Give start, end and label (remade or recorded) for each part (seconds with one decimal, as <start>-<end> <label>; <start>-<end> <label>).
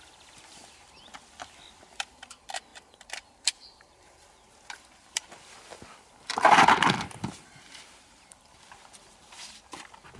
0.0-10.2 remade